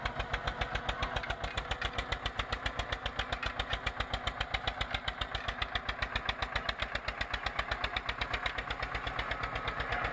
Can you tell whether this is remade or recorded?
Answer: recorded